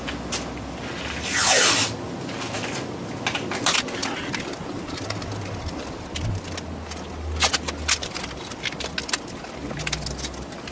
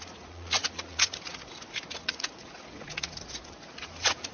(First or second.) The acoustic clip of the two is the first